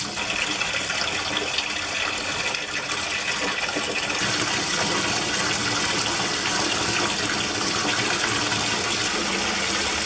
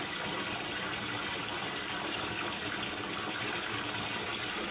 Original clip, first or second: first